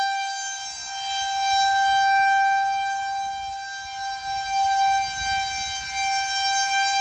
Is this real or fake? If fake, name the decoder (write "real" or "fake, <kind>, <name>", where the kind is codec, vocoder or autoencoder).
real